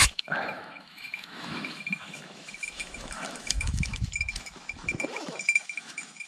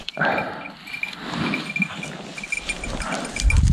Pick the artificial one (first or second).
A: first